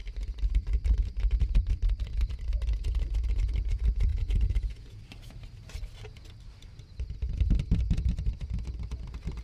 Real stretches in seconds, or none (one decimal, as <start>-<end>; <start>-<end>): 0.0-4.1; 5.0-9.4